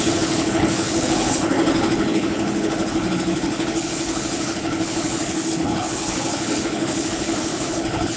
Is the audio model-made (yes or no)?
yes